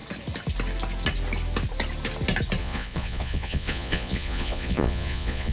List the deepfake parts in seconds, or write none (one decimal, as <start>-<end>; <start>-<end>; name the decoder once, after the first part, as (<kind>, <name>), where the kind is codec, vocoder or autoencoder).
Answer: 2.6-5.5 (vocoder, Vocos)

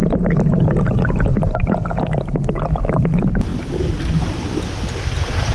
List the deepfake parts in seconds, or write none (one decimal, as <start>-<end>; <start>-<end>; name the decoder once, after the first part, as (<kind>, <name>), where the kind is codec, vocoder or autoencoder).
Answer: none

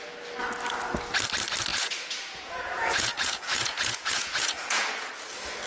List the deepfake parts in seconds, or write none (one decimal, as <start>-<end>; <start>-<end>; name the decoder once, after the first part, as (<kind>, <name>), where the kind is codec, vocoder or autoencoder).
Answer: 1.7-5.1 (vocoder, Vocos)

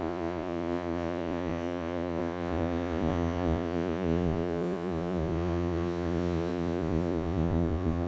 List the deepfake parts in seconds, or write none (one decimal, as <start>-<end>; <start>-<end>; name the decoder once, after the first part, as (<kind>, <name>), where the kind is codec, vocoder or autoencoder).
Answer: 0.0-8.1 (vocoder, Vocos)

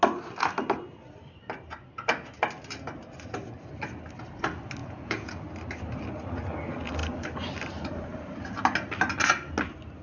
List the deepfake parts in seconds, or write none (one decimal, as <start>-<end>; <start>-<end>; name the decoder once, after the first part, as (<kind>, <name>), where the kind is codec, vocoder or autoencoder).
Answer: 4.8-5.3 (vocoder, Vocos)